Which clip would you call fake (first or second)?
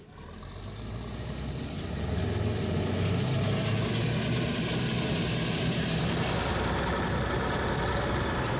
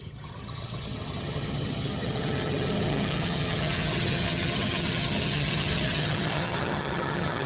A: second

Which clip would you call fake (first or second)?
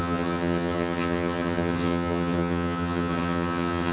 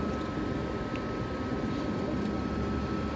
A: first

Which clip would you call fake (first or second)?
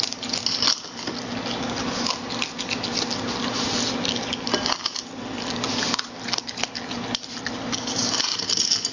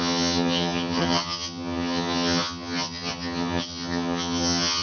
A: second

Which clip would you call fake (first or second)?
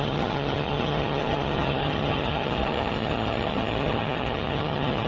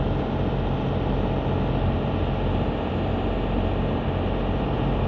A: first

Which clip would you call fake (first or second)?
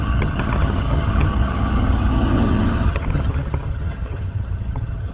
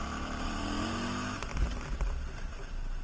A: first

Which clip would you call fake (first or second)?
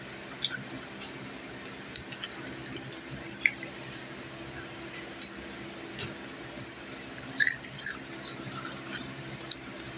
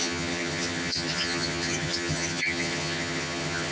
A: second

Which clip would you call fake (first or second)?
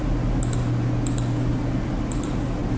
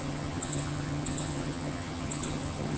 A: second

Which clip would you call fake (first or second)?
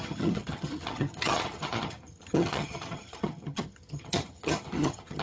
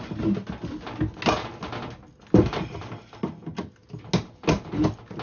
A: first